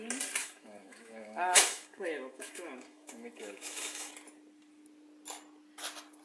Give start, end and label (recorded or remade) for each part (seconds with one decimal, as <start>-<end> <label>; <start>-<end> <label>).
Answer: 0.0-0.4 recorded; 0.4-4.1 remade; 4.1-6.2 recorded